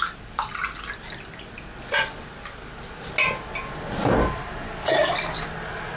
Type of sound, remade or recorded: recorded